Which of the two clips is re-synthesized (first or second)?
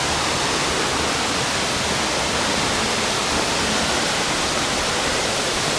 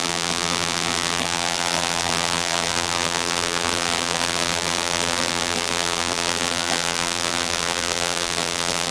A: second